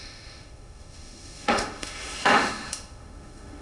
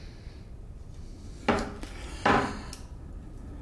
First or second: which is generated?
first